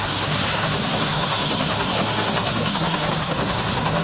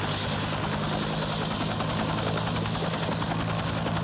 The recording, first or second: second